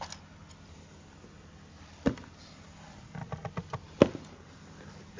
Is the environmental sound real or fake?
real